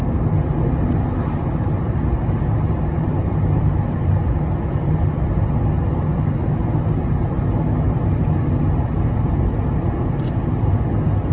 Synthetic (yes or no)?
no